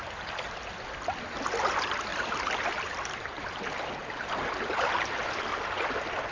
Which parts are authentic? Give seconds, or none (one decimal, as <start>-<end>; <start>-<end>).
0.0-6.3